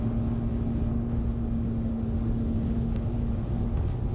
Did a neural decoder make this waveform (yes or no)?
no